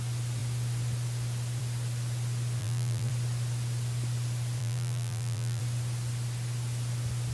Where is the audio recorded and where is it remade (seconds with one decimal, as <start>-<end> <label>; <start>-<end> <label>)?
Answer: 0.0-2.6 recorded; 2.6-3.1 remade; 3.1-4.6 recorded; 4.6-5.6 remade; 5.6-7.3 recorded